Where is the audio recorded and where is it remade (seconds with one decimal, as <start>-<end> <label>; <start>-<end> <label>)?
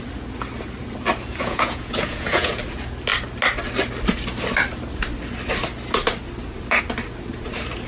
0.0-1.3 recorded; 1.3-2.6 remade; 2.6-7.9 recorded